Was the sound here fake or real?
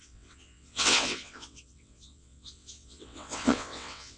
fake